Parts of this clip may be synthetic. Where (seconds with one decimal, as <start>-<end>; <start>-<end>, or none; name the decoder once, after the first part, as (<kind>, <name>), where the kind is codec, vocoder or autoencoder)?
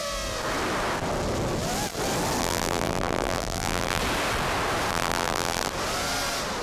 2.4-4.0 (vocoder, BigVGAN v2); 4.9-5.7